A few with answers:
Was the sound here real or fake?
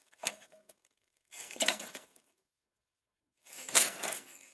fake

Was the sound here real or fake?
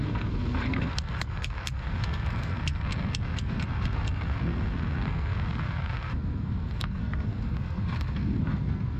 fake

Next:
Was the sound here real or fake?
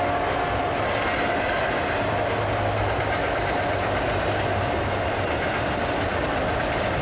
real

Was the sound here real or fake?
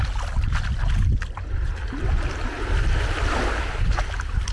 real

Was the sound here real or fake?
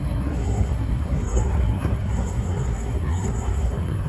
fake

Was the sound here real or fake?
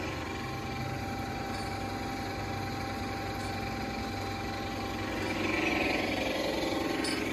real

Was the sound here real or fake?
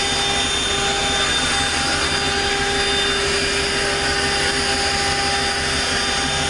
real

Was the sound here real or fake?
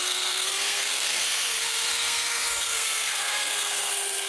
fake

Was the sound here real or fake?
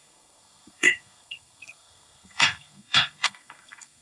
fake